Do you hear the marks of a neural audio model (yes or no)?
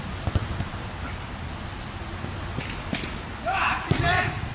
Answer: no